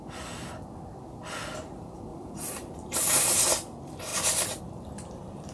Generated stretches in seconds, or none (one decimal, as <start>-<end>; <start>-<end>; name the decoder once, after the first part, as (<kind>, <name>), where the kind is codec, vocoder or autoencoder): 2.1-3.4 (vocoder, BigVGAN v2)